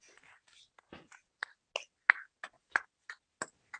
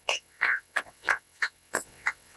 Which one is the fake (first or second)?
second